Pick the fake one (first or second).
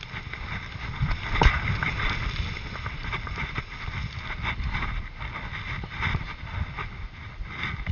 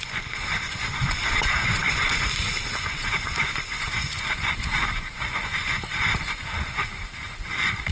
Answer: second